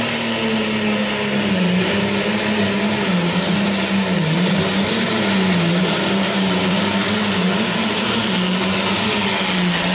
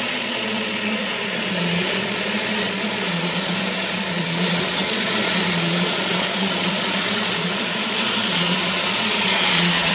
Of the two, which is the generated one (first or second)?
second